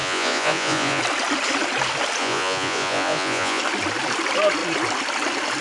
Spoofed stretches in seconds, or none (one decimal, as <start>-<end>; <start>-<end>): 0.0-1.0; 2.2-3.6